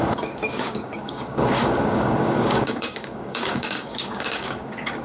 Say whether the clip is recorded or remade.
remade